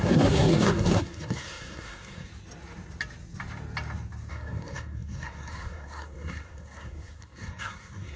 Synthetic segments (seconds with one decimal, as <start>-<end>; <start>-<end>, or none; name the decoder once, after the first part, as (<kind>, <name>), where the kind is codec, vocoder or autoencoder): 0.0-2.3 (codec, SNAC); 4.3-8.2